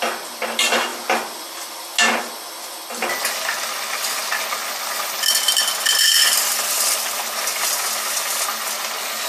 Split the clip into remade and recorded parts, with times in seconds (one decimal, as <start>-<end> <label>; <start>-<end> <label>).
0.0-9.3 recorded